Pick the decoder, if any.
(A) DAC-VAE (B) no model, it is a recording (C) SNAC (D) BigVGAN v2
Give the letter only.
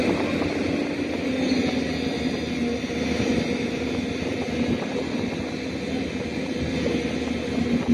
B